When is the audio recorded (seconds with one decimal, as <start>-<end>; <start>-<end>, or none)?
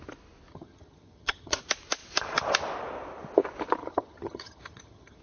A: 0.0-0.5; 1.6-3.8